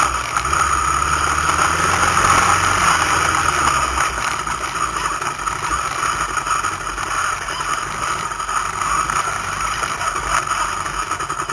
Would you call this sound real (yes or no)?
yes